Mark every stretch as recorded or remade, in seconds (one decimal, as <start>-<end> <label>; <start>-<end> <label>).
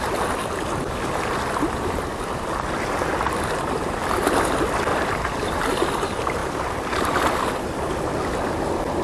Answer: 0.0-4.9 recorded; 4.9-5.8 remade; 5.8-6.4 recorded; 6.4-7.9 remade; 7.9-9.0 recorded